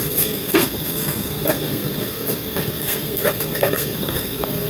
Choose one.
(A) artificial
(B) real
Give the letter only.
A